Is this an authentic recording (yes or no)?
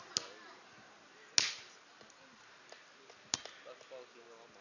yes